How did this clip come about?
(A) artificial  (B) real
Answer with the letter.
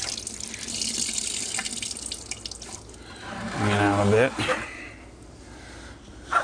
B